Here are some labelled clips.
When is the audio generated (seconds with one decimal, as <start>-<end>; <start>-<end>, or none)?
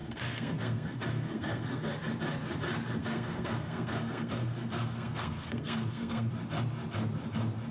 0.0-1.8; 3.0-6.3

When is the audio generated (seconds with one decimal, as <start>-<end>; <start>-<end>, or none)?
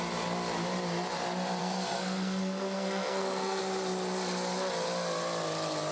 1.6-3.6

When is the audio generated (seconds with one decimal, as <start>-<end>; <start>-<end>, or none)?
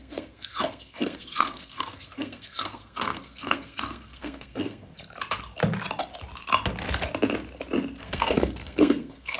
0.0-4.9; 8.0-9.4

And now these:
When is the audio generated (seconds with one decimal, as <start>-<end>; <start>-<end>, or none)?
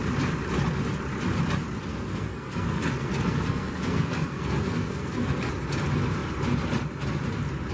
1.9-5.5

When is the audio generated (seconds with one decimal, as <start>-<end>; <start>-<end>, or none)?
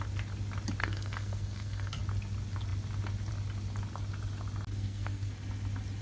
0.8-2.0; 4.7-5.3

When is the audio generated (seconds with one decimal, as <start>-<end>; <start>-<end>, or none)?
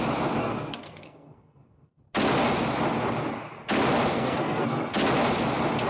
0.4-2.0; 4.1-4.9